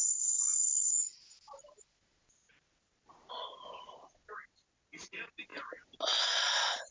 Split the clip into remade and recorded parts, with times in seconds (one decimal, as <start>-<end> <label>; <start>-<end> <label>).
0.0-0.9 remade; 0.9-6.9 recorded

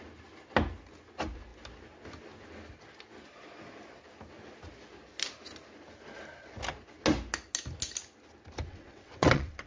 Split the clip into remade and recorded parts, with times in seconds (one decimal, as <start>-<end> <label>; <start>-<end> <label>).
0.0-8.7 recorded; 8.7-9.7 remade

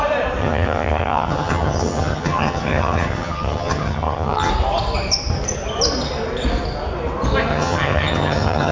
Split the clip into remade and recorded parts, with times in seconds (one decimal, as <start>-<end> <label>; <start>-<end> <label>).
0.0-0.4 recorded; 0.4-4.5 remade; 4.5-7.5 recorded; 7.5-8.7 remade

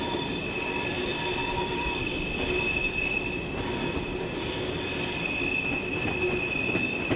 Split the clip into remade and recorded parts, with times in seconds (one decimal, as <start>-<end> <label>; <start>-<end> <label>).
0.0-1.4 recorded; 1.4-2.3 remade; 2.3-7.2 recorded

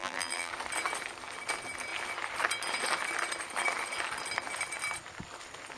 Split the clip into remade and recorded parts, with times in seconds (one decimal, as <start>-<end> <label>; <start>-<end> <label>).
0.0-0.5 remade; 0.5-5.8 recorded

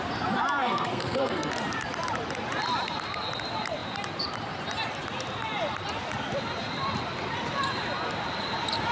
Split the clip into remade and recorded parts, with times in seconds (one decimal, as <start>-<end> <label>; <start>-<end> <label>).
0.0-0.6 recorded; 0.6-1.5 remade; 1.5-8.9 recorded

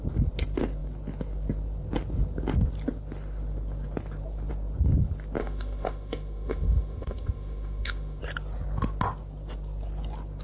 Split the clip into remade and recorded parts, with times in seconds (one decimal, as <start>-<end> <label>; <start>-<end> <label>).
0.0-5.4 recorded; 5.4-8.2 remade; 8.2-10.4 recorded